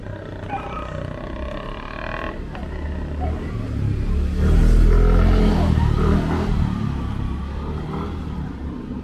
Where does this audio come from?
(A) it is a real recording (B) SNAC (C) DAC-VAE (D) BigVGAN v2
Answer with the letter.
A